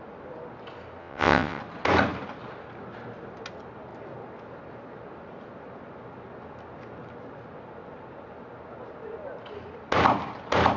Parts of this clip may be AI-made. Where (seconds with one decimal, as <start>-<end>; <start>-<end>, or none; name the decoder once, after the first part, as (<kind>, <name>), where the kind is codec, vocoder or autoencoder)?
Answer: 1.0-1.6 (vocoder, WaveNeXt)